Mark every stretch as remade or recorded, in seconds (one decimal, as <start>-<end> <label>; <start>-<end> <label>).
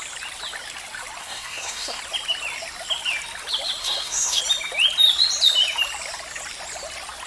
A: 0.0-1.2 recorded; 1.2-2.0 remade; 2.0-3.8 recorded; 3.8-4.4 remade; 4.4-7.3 recorded